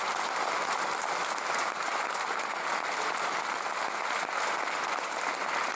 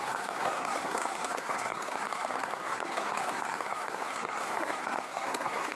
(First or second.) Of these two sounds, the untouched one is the first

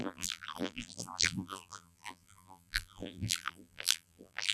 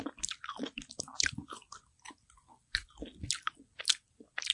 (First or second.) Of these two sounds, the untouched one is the second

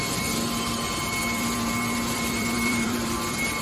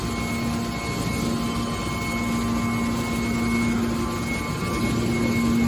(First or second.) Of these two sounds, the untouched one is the second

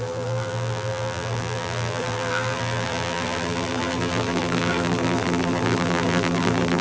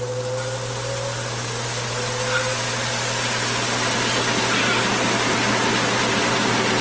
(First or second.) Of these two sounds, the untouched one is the second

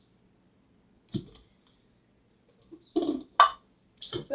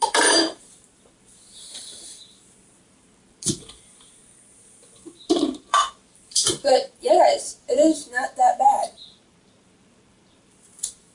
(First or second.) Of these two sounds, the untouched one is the first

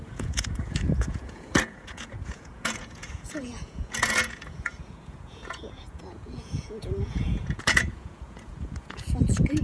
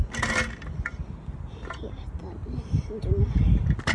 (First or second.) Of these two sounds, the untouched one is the second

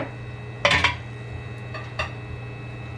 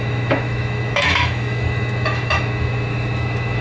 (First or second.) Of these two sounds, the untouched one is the first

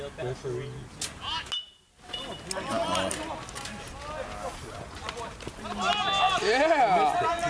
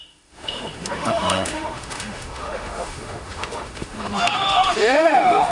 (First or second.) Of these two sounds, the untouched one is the first